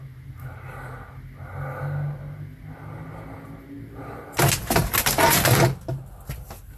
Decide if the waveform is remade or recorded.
recorded